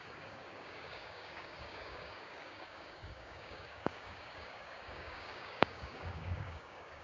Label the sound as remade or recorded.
remade